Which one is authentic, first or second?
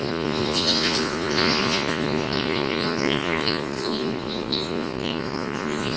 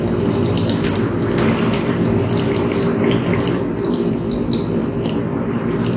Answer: second